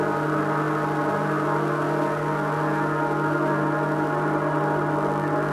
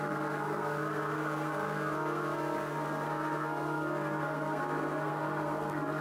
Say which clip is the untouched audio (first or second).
first